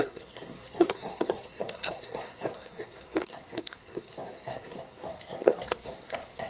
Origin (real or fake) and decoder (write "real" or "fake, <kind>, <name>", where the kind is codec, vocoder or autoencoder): fake, codec, SNAC